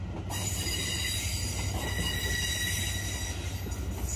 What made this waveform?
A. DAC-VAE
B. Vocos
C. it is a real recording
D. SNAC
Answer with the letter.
C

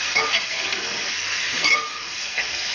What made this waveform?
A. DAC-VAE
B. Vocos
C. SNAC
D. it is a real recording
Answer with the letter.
C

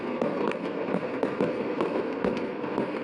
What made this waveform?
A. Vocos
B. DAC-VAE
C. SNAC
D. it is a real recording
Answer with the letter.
C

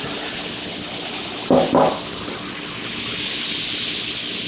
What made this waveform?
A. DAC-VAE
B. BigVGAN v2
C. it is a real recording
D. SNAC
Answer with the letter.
C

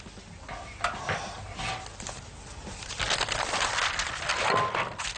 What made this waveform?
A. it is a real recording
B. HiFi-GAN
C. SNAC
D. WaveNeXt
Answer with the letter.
A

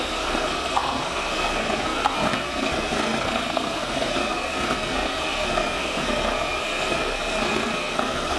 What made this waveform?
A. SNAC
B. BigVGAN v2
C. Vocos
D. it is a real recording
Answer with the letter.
A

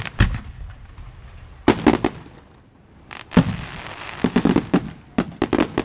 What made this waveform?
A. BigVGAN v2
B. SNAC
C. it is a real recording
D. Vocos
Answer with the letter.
C